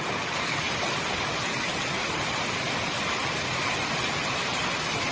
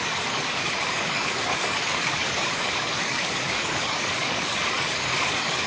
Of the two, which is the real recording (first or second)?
first